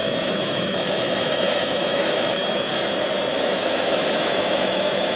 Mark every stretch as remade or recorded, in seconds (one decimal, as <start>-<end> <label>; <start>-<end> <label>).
0.0-2.7 remade; 2.7-3.4 recorded; 3.4-5.2 remade